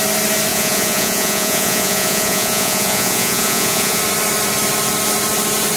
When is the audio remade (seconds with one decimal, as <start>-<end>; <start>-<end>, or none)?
0.5-4.0